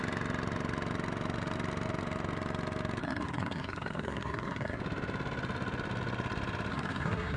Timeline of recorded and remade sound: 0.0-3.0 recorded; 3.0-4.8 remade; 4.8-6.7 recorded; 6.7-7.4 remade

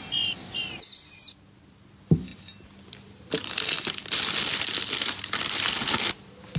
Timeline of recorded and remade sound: 0.0-6.6 recorded

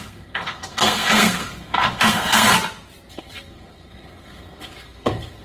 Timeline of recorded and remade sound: 0.0-2.5 remade; 2.5-3.1 recorded; 3.1-5.4 remade